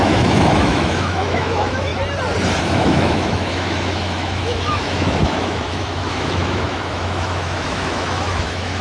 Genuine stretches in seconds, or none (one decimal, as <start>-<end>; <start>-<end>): 1.9-2.6